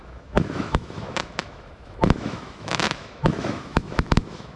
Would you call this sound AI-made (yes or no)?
yes